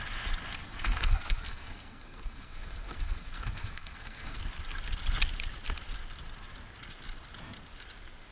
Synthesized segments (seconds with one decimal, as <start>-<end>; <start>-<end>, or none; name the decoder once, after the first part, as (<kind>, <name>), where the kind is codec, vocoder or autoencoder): 0.6-4.4 (codec, SNAC)